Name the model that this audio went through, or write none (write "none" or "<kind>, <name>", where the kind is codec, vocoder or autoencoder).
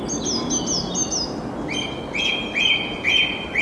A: none